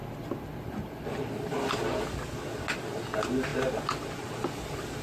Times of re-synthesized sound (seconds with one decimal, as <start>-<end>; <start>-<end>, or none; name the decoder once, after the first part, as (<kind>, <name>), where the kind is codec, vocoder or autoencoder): none